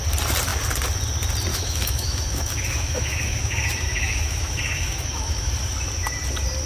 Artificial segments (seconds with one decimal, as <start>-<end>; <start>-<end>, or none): 1.5-5.5